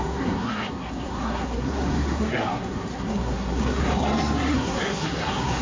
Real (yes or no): no